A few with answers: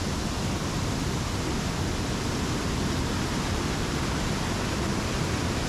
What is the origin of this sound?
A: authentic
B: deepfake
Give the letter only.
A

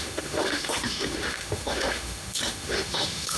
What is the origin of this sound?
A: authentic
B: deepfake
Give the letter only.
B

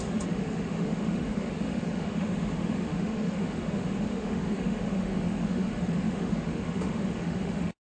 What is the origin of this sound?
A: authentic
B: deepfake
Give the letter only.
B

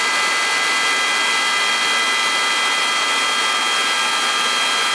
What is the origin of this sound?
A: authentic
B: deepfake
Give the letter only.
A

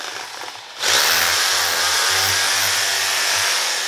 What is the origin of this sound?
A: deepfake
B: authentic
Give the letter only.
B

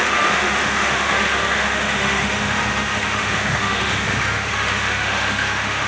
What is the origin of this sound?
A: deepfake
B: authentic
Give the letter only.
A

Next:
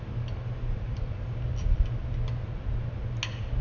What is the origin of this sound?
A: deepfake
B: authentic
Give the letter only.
B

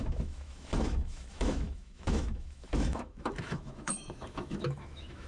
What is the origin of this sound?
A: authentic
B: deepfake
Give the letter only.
B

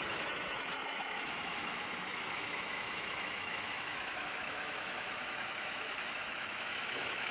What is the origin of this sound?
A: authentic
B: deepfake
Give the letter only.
B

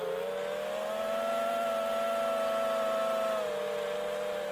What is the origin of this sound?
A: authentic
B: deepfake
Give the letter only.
A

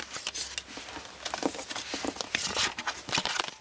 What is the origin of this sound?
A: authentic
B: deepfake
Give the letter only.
A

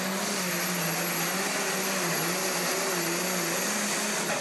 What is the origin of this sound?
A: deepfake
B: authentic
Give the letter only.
B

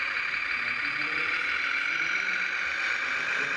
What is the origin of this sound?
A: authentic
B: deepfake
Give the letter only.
A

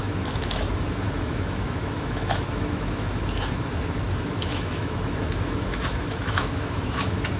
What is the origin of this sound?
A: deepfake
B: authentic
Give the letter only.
A